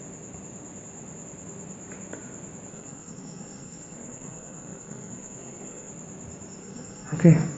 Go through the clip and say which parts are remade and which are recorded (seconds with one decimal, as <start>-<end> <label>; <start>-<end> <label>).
0.0-2.7 recorded; 2.7-5.9 remade; 5.9-6.6 recorded; 6.6-7.6 remade